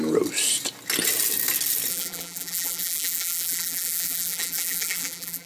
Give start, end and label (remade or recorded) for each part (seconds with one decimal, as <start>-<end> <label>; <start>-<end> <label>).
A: 0.0-1.9 recorded; 1.9-5.5 remade